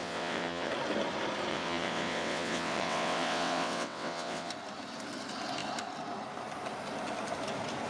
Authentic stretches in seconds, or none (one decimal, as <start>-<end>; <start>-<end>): 0.7-1.5; 4.5-7.9

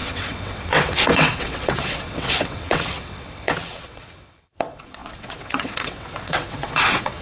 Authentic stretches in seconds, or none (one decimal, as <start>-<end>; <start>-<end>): none

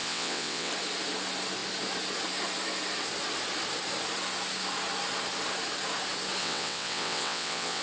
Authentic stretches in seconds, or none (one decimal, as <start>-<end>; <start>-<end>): 0.7-6.4

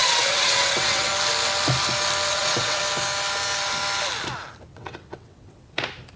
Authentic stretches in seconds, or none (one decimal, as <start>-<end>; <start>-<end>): 1.1-2.3; 2.8-4.7; 5.8-6.2